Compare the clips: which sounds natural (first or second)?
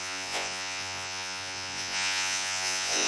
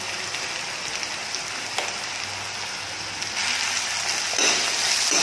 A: second